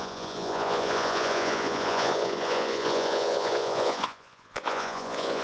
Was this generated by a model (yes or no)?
yes